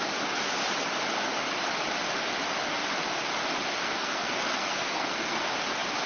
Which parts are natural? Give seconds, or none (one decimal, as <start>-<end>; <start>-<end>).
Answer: 0.0-3.8; 5.5-6.1